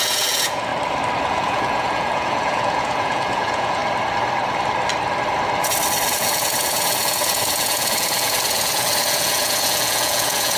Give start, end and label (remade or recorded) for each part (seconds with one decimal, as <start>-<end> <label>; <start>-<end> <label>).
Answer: 0.0-0.7 remade; 0.7-1.3 recorded; 1.3-3.8 remade; 3.8-6.1 recorded; 6.1-10.6 remade